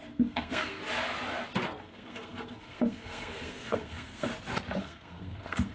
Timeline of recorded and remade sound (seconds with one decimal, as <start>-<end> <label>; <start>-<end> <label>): 0.0-0.8 remade; 0.8-1.8 recorded; 1.8-4.3 remade; 4.3-4.8 recorded; 4.8-5.7 remade